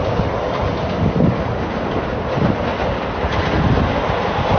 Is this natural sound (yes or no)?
yes